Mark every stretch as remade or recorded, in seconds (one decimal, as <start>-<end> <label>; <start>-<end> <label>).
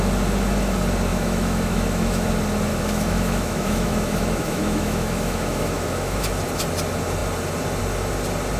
0.0-1.1 recorded; 1.1-2.3 remade; 2.3-2.7 recorded; 2.7-6.3 remade; 6.3-8.6 recorded